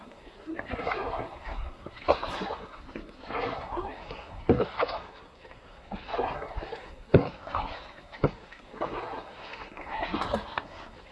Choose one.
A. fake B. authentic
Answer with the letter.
A